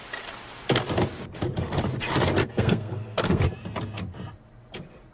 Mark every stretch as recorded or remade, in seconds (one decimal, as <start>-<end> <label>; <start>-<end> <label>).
0.0-2.4 recorded; 2.4-3.4 remade; 3.4-5.1 recorded